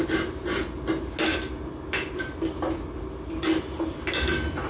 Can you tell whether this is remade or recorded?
recorded